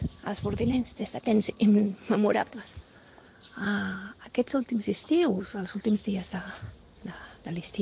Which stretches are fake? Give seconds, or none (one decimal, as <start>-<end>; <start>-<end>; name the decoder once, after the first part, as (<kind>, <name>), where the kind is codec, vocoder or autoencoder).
none